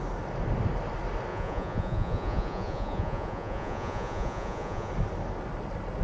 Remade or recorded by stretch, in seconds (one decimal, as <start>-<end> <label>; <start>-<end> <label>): 0.0-1.3 recorded; 1.3-4.9 remade; 4.9-6.0 recorded